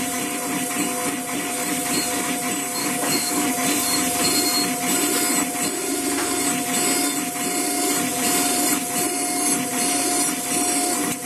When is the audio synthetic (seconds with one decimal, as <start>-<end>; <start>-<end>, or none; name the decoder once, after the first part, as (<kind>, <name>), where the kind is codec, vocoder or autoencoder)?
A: 2.8-3.5 (codec, DAC)